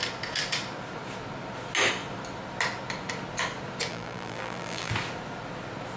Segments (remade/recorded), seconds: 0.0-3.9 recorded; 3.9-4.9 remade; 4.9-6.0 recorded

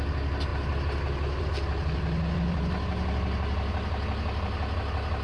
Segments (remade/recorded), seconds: 0.0-5.2 recorded